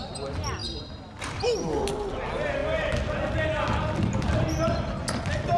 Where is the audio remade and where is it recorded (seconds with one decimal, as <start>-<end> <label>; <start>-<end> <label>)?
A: 0.0-5.6 recorded